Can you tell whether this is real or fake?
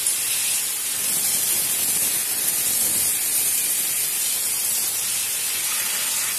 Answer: real